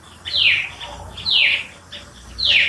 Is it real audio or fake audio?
real